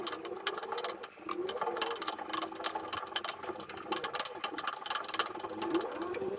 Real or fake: real